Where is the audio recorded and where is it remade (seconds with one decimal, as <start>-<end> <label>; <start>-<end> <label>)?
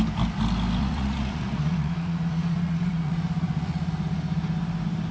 0.0-0.8 recorded; 0.8-3.9 remade; 3.9-5.1 recorded